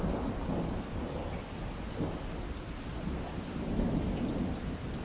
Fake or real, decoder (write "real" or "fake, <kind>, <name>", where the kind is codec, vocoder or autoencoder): real